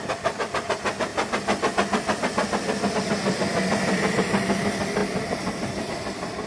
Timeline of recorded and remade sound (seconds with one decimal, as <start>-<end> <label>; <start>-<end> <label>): 0.0-6.5 recorded